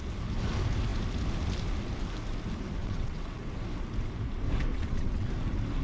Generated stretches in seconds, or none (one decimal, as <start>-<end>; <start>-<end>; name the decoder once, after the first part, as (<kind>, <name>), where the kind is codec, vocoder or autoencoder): 2.8-3.4 (vocoder, WaveNeXt); 4.7-5.3